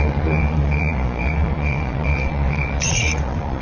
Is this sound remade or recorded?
remade